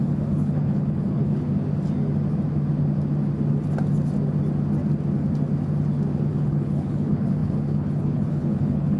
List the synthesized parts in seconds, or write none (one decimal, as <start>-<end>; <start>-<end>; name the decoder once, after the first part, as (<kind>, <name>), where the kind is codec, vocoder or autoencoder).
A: 0.0-1.5 (codec, HILCodec); 6.3-9.0